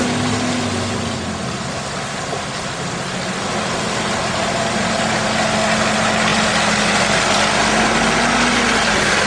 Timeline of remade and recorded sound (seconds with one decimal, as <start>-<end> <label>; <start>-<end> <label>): 0.0-9.3 recorded